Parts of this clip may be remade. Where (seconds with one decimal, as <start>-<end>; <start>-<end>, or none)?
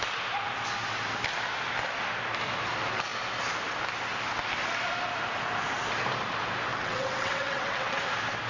6.7-8.0